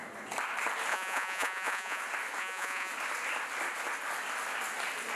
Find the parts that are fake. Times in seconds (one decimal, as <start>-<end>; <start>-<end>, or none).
0.9-2.0; 2.4-2.9